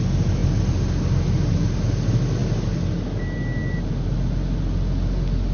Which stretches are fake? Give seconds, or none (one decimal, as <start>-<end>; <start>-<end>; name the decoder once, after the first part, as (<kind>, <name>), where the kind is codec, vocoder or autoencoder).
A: none